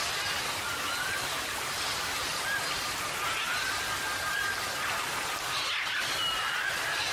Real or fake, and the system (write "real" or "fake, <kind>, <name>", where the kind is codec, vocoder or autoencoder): real